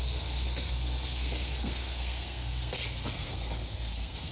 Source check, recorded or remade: remade